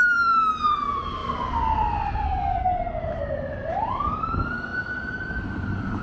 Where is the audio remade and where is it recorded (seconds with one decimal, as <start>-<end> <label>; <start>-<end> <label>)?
0.0-1.2 remade; 1.2-3.0 recorded; 3.0-6.0 remade